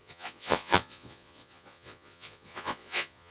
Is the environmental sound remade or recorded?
remade